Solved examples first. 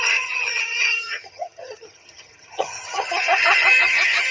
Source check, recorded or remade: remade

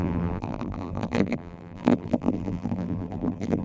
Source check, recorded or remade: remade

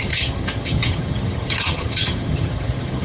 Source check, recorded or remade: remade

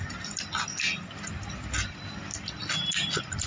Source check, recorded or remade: recorded